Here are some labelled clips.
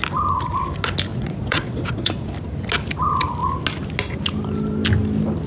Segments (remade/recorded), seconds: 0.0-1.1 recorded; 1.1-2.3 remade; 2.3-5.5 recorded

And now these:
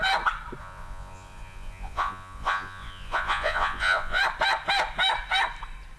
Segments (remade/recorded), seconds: 0.0-0.6 recorded; 0.6-4.2 remade; 4.2-6.0 recorded

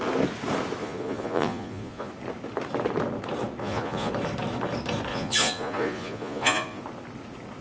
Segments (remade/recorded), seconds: 0.0-0.8 recorded; 0.8-2.1 remade; 2.1-3.6 recorded; 3.6-4.1 remade; 4.1-5.1 recorded; 5.1-6.8 remade; 6.8-7.6 recorded

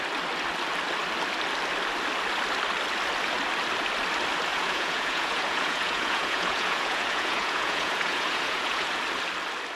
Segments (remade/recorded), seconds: 0.0-4.5 recorded; 4.5-9.0 remade; 9.0-9.8 recorded

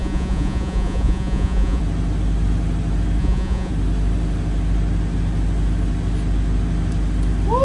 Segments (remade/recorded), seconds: 0.0-1.8 remade; 1.8-3.2 recorded; 3.2-3.7 remade; 3.7-7.6 recorded

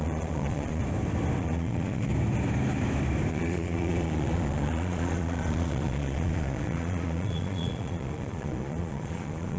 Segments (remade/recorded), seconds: 0.0-0.8 remade; 0.8-1.4 recorded; 1.4-2.1 remade; 2.1-3.3 recorded; 3.3-9.6 remade

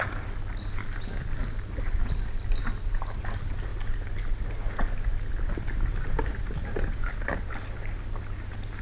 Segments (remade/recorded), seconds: 0.0-8.8 recorded